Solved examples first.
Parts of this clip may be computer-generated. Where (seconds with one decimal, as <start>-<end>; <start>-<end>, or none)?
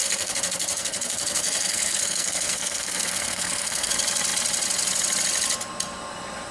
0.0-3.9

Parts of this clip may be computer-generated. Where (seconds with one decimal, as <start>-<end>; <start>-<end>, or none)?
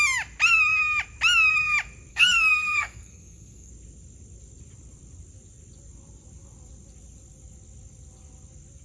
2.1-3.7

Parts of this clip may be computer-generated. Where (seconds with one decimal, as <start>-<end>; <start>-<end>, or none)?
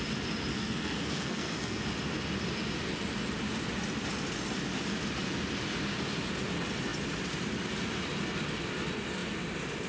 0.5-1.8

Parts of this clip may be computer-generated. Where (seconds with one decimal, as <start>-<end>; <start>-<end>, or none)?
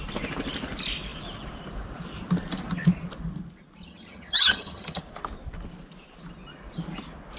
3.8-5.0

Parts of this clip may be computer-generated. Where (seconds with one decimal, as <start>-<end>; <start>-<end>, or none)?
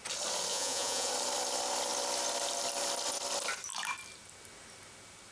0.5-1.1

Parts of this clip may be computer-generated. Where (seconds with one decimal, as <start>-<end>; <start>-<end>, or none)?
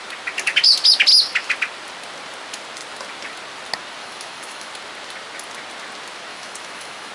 4.0-4.7; 6.3-7.1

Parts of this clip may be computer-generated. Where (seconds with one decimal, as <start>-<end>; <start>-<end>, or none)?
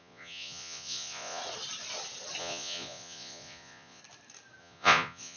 0.0-1.4; 2.4-4.0; 4.6-5.4